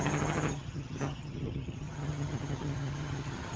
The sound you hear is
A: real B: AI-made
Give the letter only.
B